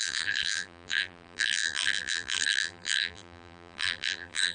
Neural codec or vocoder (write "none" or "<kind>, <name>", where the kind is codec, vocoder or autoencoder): vocoder, BigVGAN v2